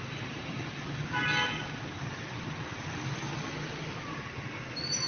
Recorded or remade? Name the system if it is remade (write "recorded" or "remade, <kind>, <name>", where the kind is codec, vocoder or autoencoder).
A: recorded